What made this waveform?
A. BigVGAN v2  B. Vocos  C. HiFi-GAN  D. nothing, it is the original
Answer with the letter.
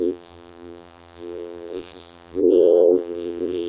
A